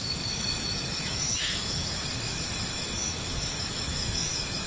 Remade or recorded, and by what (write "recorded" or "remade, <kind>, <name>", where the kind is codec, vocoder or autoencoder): remade, autoencoder, DAC-VAE